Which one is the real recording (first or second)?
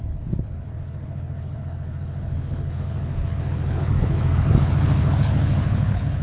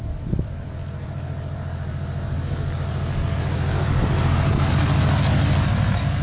second